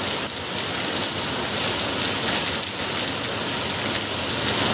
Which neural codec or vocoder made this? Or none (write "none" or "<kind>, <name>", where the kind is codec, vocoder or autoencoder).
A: none